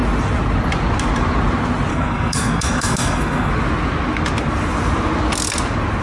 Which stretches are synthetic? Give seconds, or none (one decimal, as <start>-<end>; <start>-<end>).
1.9-3.5